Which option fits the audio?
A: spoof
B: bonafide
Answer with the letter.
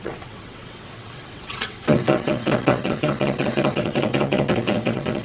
A